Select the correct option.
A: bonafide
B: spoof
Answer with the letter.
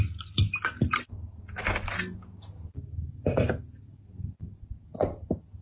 A